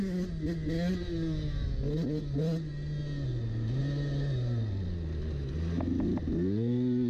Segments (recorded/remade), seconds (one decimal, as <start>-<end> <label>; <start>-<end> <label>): 0.0-7.1 recorded